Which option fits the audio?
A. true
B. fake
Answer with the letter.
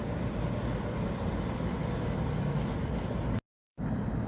A